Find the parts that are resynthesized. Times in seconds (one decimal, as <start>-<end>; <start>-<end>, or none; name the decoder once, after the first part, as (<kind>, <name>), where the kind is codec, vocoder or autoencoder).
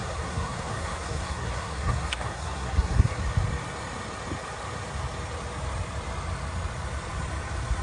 0.0-3.2 (codec, SNAC)